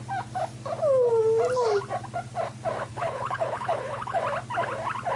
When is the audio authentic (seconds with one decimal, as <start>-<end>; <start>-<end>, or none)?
0.0-2.9; 4.2-5.2